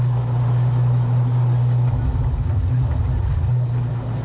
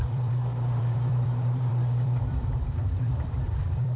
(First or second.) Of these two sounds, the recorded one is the first